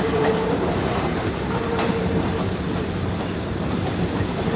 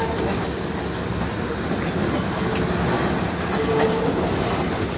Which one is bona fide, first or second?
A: second